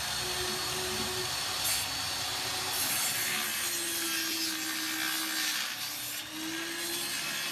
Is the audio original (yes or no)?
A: yes